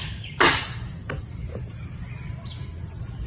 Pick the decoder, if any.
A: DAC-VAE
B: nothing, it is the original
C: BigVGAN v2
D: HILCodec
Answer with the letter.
B